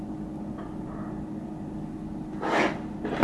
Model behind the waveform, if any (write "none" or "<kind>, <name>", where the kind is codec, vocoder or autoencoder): none